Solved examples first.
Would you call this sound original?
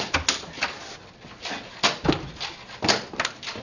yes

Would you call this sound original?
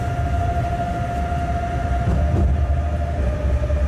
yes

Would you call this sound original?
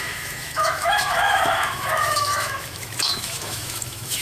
no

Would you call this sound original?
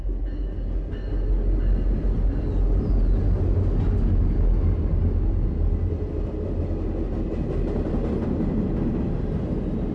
yes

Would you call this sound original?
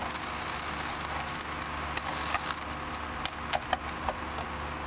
yes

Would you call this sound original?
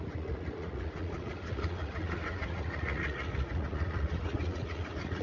no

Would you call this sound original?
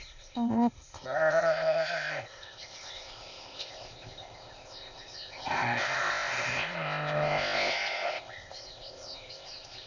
no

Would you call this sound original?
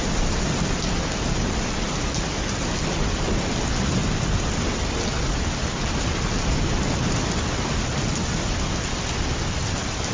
yes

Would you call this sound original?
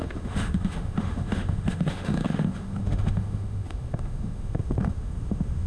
no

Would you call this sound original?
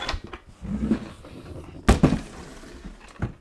yes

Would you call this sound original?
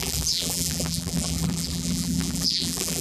no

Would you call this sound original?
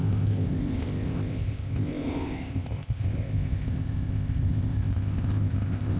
no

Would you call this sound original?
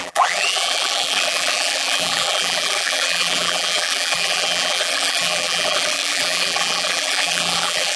no